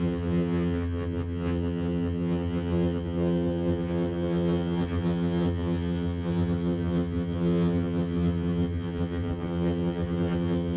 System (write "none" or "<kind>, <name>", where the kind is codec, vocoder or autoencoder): vocoder, HiFi-GAN